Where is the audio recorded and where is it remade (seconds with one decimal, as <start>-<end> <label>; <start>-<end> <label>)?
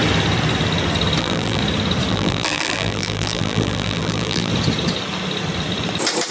0.0-1.2 recorded; 1.2-1.6 remade; 1.6-2.1 recorded; 2.1-4.5 remade; 4.5-6.3 recorded